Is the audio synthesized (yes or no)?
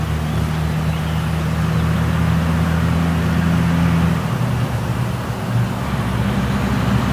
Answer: no